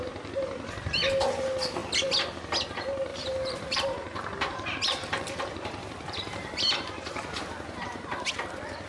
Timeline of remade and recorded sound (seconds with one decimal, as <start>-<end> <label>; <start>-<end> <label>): 0.0-3.1 recorded; 3.1-8.3 remade; 8.3-8.9 recorded